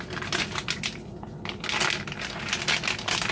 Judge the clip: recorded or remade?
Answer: recorded